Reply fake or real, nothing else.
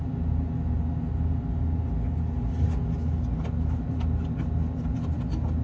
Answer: real